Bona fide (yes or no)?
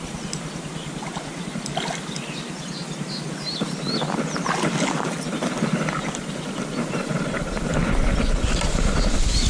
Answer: yes